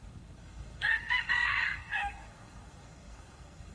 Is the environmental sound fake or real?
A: fake